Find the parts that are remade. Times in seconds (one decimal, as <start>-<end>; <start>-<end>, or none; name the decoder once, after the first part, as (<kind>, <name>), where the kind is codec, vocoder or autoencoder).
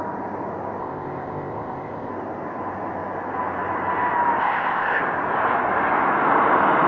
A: 0.8-2.1 (codec, ZipCodec); 4.4-5.0